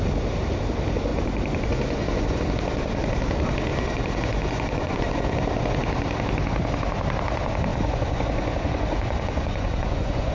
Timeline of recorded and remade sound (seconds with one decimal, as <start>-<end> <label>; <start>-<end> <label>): 0.0-1.1 recorded; 1.1-2.4 remade; 2.4-3.7 recorded; 3.7-5.0 remade; 5.0-7.7 recorded; 7.7-10.3 remade